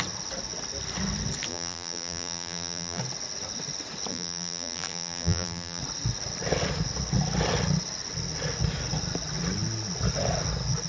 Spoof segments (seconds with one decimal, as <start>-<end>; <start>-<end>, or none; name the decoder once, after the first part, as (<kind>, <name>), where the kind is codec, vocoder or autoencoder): 1.5-3.0 (vocoder, BigVGAN v2); 4.1-5.8